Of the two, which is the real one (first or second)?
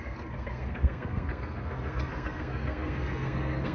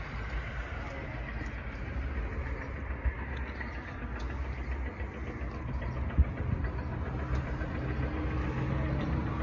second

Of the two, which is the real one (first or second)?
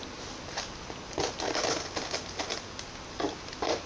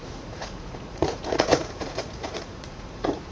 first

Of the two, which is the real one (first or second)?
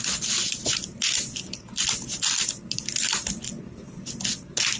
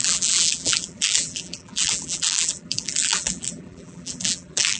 first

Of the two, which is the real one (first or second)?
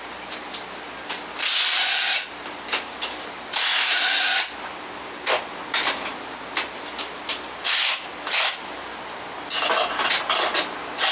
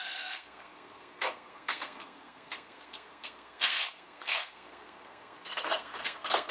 first